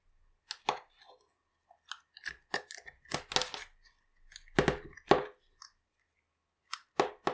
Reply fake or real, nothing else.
real